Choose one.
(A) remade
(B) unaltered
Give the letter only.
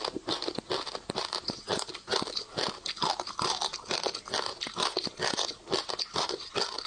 B